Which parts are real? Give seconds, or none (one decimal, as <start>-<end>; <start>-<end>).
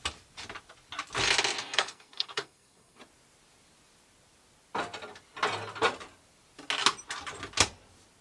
0.0-1.6; 3.0-8.2